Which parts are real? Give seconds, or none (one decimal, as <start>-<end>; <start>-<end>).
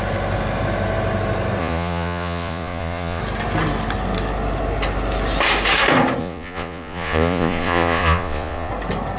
0.0-1.6; 3.2-6.2; 8.7-9.2